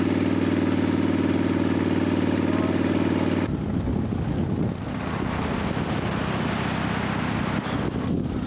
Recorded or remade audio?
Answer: recorded